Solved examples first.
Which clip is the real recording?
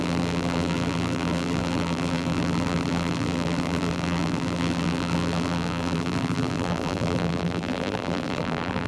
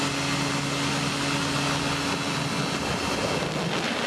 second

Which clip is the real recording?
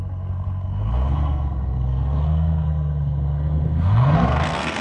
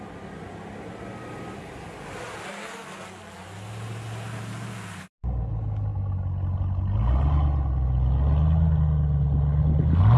second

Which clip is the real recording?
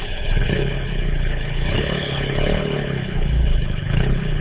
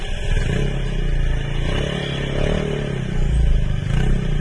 second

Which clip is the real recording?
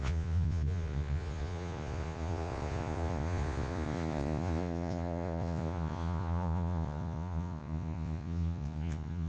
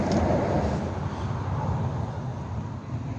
second